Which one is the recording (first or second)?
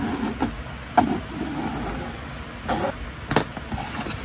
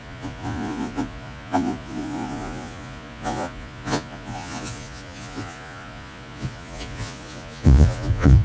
first